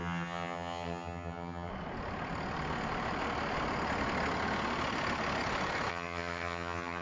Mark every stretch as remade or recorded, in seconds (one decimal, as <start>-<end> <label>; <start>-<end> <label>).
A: 0.0-1.7 remade; 1.7-5.9 recorded; 5.9-7.0 remade